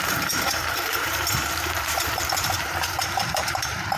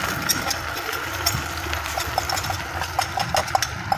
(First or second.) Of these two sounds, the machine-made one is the first